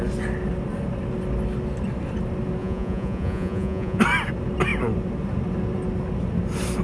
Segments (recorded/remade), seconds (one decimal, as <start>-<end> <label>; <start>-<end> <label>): 0.0-2.6 recorded; 2.6-4.0 remade; 4.0-6.8 recorded